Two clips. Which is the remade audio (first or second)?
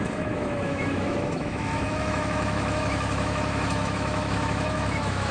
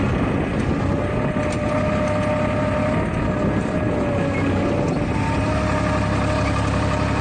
first